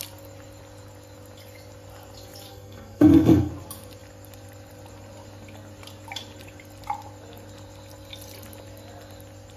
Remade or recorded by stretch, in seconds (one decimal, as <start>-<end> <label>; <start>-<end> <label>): 0.0-2.5 recorded; 2.5-3.5 remade; 3.5-9.6 recorded